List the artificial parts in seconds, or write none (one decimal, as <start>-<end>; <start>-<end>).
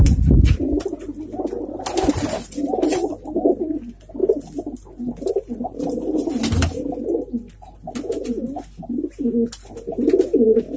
none